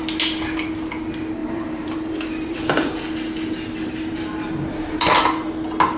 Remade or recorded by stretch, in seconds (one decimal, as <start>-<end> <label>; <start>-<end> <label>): 0.0-1.4 recorded; 1.4-2.1 remade; 2.1-3.8 recorded; 3.8-5.5 remade; 5.5-6.0 recorded